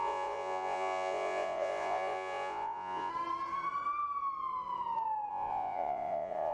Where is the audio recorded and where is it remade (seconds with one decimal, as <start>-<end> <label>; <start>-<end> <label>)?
0.0-3.1 remade; 3.1-5.3 recorded; 5.3-6.5 remade

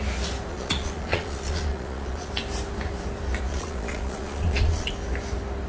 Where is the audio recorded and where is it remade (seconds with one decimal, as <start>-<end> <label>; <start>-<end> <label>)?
0.0-0.5 recorded; 0.5-2.3 remade; 2.3-3.5 recorded; 3.5-4.9 remade; 4.9-5.7 recorded

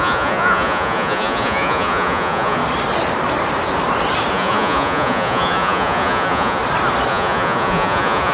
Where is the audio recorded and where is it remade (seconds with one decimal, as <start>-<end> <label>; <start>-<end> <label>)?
0.0-2.6 remade; 2.6-4.3 recorded; 4.3-6.6 remade; 6.6-7.1 recorded; 7.1-8.3 remade

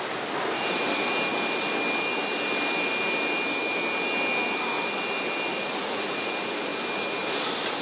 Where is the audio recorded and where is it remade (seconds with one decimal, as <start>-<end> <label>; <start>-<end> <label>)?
0.0-5.5 recorded; 5.5-6.3 remade; 6.3-7.8 recorded

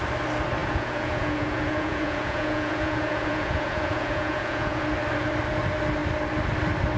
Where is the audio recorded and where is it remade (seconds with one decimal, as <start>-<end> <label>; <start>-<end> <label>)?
0.0-0.6 recorded; 0.6-4.8 remade; 4.8-7.0 recorded

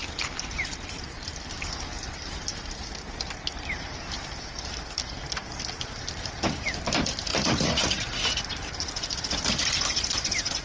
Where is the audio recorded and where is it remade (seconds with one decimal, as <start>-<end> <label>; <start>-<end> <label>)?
0.0-7.3 recorded; 7.3-8.4 remade; 8.4-10.6 recorded